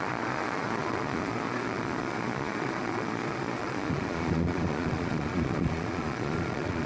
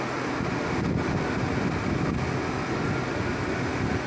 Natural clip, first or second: second